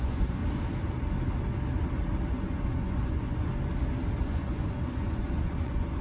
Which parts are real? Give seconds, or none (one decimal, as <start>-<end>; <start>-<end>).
0.4-2.3; 3.5-4.2

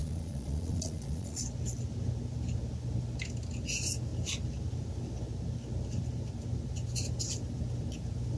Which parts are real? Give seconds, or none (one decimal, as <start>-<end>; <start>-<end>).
1.4-8.4

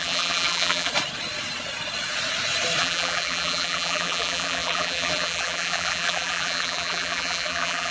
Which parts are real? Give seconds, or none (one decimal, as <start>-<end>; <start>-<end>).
0.9-2.8